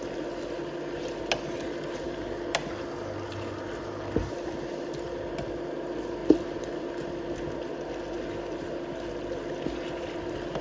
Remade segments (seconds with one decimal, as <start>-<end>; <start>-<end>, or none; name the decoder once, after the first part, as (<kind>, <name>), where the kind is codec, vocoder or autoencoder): none